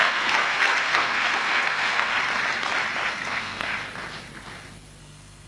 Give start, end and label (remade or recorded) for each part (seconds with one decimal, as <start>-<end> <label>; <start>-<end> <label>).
0.0-2.1 remade; 2.1-3.1 recorded; 3.1-3.7 remade; 3.7-5.0 recorded; 5.0-5.5 remade